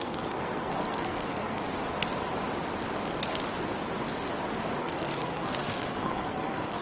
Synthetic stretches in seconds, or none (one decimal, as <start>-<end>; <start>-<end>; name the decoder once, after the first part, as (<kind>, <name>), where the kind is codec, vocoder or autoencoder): 0.0-1.6 (codec, SNAC); 4.8-6.8